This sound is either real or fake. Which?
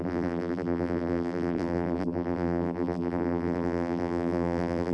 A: fake